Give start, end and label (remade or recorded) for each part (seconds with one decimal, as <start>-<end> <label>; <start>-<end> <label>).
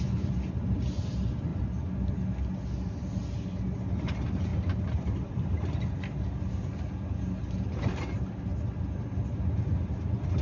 0.0-4.5 recorded; 4.5-7.9 remade; 7.9-10.4 recorded